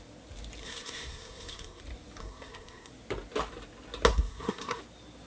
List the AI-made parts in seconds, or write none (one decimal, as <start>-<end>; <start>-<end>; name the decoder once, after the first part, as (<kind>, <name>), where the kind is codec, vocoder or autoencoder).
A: 0.6-1.8 (codec, SNAC); 2.2-2.9; 4.1-4.8